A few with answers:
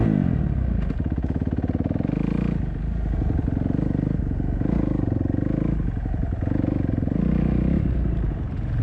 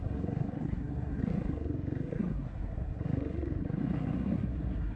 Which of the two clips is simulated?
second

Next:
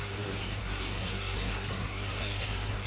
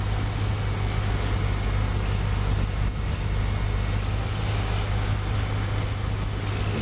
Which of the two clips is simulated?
first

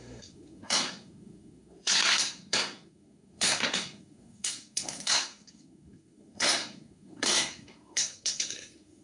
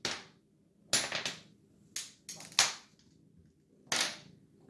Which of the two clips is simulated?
first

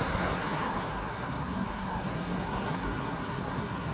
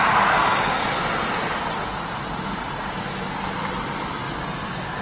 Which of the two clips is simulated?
first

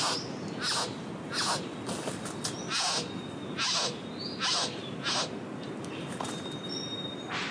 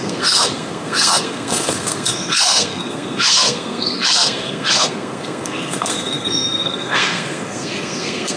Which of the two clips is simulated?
second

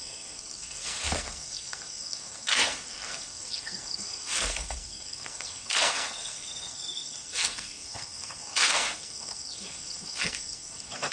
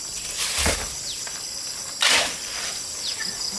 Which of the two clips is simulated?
first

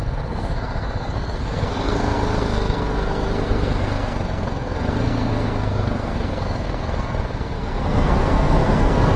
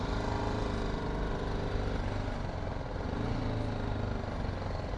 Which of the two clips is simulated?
first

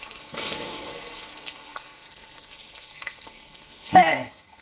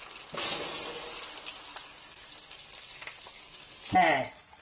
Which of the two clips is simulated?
first